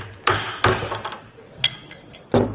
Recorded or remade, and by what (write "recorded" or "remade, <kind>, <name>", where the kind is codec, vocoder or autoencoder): recorded